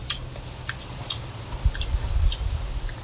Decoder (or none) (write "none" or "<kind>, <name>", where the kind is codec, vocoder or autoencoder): none